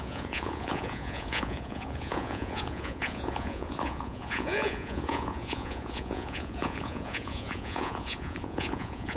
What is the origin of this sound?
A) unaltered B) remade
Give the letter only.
B